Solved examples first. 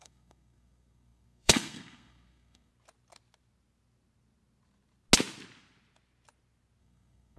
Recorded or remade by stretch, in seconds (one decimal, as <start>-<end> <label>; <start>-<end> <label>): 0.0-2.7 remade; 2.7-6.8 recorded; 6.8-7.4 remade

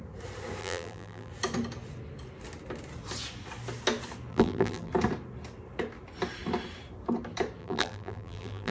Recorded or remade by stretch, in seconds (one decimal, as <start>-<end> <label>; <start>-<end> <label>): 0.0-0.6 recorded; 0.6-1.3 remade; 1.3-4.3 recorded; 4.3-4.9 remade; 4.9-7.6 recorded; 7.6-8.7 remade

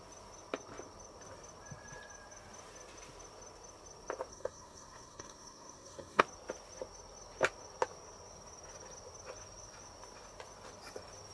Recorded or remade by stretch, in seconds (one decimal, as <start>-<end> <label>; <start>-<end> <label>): 0.0-4.3 recorded; 4.3-6.2 remade; 6.2-11.3 recorded

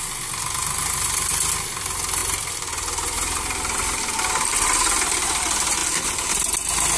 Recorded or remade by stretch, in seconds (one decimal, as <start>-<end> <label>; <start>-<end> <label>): 0.0-2.2 recorded; 2.2-5.3 remade; 5.3-5.8 recorded; 5.8-6.3 remade; 6.3-7.0 recorded

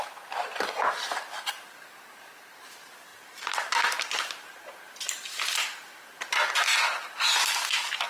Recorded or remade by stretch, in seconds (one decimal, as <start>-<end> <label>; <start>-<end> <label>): 0.0-3.1 recorded; 3.1-6.3 remade; 6.3-8.1 recorded

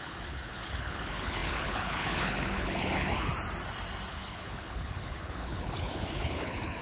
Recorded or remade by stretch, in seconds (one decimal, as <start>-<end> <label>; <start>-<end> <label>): 0.0-3.3 remade; 3.3-4.1 recorded; 4.1-6.8 remade

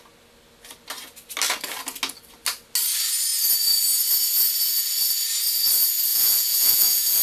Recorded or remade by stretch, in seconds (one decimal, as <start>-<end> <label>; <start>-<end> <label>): 0.0-6.1 recorded; 6.1-7.2 remade

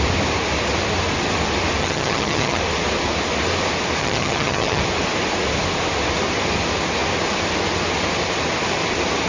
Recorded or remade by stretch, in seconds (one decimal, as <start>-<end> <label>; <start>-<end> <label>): 0.0-1.8 recorded; 1.8-2.6 remade; 2.6-4.0 recorded; 4.0-4.8 remade; 4.8-9.3 recorded